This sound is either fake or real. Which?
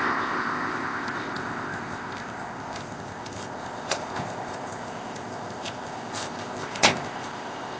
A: fake